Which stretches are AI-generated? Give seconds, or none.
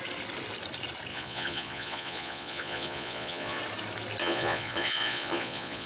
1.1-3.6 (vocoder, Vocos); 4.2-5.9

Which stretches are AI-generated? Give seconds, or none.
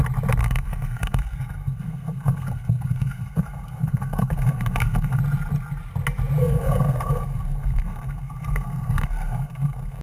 0.4-5.2 (codec, SNAC); 6.4-10.0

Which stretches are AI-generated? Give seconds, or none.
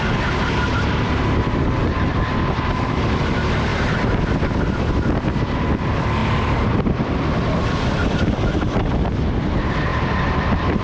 1.8-2.4 (vocoder, BigVGAN v2); 6.2-7.6; 9.9-10.8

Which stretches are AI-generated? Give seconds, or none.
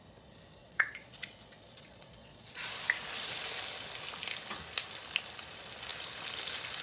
0.6-2.7 (vocoder, Vocos)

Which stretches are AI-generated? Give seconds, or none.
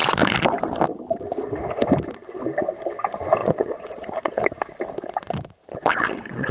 3.4-4.4 (vocoder, Vocos); 5.6-6.5